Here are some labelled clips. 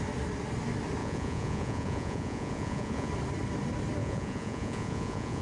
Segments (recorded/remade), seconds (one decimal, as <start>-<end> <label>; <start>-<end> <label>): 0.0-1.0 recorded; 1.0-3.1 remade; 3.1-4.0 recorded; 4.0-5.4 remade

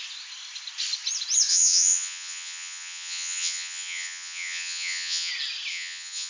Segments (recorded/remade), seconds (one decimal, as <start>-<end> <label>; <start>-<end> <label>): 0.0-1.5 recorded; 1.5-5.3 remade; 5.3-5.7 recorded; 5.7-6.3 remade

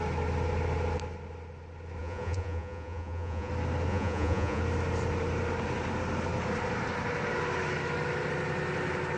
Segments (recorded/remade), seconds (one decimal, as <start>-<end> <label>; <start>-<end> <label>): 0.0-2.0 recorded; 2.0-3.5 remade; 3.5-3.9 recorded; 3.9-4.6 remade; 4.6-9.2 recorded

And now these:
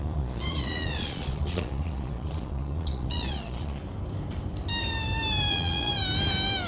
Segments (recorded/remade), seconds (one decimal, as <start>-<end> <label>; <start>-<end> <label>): 0.0-3.8 remade; 3.8-5.5 recorded; 5.5-5.9 remade; 5.9-6.7 recorded

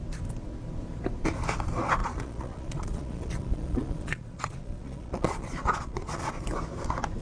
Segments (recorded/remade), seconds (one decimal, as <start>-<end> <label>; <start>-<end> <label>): 0.0-2.0 recorded; 2.0-6.3 remade; 6.3-7.2 recorded

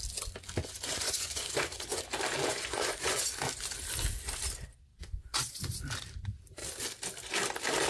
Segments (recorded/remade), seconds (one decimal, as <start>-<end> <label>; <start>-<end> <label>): 0.0-0.6 recorded; 0.6-2.0 remade; 2.0-2.5 recorded; 2.5-3.3 remade; 3.3-4.9 recorded; 4.9-5.8 remade; 5.8-7.9 recorded

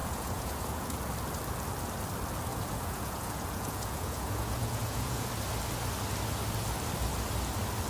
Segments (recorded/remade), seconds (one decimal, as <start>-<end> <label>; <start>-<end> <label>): 0.0-1.0 remade; 1.0-2.5 recorded; 2.5-5.3 remade; 5.3-7.9 recorded